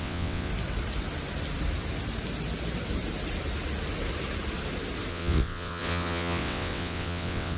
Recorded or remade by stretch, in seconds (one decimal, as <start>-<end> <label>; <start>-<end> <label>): 0.0-0.5 remade; 0.5-5.1 recorded; 5.1-7.6 remade